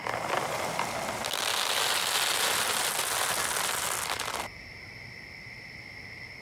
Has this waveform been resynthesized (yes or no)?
no